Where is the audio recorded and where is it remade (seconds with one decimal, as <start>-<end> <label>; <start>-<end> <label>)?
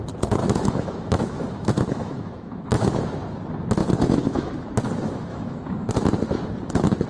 0.0-0.4 recorded; 0.4-3.0 remade; 3.0-3.8 recorded; 3.8-4.7 remade; 4.7-5.3 recorded; 5.3-5.9 remade; 5.9-7.1 recorded